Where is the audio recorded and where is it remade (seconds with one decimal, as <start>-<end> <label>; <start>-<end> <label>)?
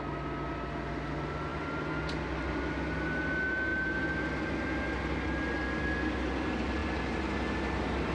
0.0-8.1 recorded